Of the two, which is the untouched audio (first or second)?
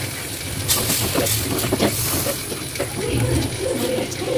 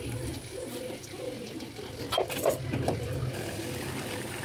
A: first